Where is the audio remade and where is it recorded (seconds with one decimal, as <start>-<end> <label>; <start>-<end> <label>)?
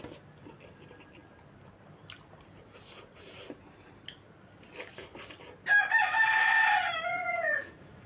0.0-7.1 recorded; 7.1-8.1 remade